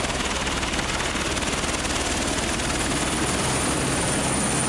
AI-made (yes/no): no